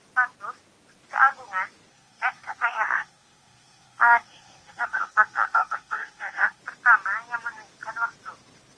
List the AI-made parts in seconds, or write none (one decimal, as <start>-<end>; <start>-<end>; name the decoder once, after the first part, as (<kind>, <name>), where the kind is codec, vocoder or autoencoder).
1.9-6.6 (codec, SNAC)